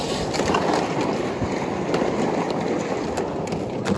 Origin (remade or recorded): recorded